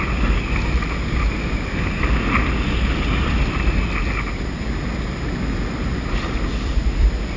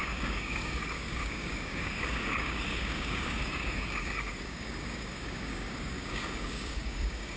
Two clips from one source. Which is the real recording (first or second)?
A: first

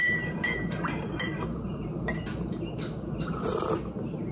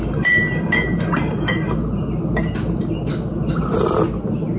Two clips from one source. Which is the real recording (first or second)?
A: second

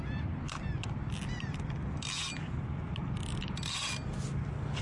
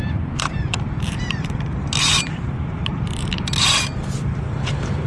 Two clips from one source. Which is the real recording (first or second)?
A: first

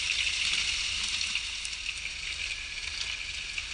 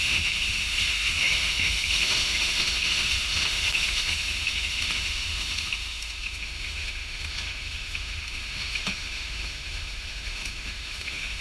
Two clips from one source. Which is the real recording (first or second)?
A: first